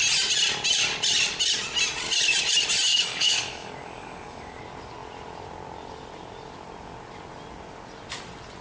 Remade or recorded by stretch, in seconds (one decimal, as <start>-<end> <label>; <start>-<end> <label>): 0.0-2.9 recorded; 2.9-4.6 remade; 4.6-8.6 recorded